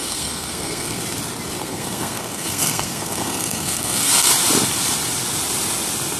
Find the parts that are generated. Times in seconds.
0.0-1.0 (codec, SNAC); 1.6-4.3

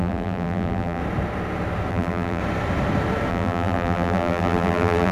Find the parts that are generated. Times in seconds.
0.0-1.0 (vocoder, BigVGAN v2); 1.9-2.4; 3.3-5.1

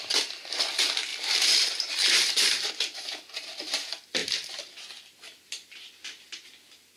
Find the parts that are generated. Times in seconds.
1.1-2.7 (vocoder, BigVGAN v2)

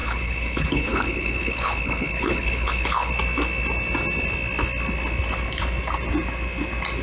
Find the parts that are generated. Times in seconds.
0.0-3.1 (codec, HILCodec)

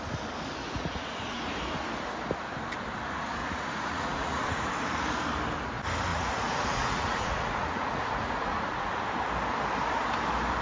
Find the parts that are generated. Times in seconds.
0.6-1.5 (vocoder, Vocos); 3.4-4.7; 6.1-8.9

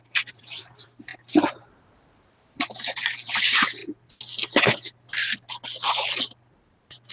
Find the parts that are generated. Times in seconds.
0.0-3.8 (vocoder, BigVGAN v2); 6.2-7.1

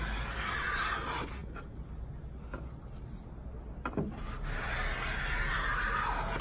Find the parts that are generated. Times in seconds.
none

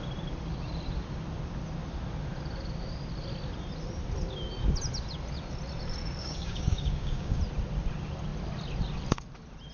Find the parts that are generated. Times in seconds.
6.2-7.4 (codec, DAC)